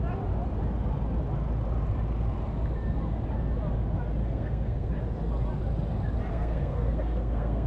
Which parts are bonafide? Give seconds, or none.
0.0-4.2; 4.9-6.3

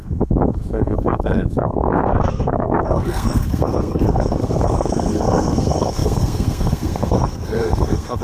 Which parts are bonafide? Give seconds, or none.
none